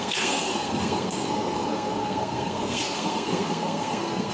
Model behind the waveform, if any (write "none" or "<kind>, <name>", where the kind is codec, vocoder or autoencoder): codec, SNAC